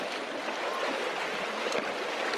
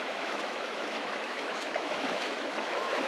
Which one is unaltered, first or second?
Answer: first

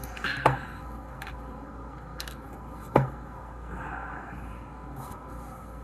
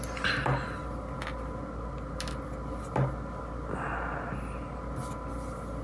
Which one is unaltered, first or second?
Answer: second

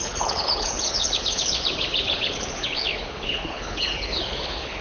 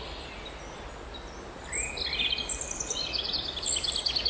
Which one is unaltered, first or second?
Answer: second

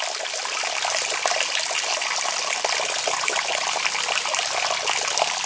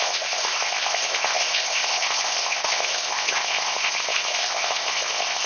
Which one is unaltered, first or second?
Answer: first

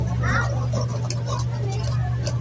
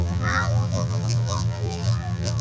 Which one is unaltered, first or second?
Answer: first